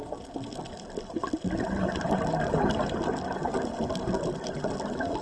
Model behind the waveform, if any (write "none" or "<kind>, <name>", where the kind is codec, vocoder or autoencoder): none